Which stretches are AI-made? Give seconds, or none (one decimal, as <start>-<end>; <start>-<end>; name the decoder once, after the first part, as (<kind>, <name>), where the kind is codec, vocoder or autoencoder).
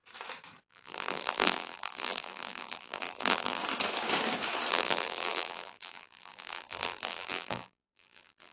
0.6-3.6 (vocoder, BigVGAN v2); 4.7-8.5